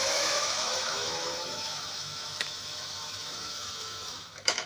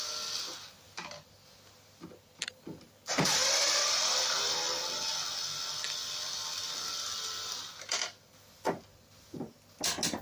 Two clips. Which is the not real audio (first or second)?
first